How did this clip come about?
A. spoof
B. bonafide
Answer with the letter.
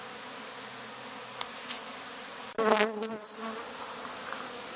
B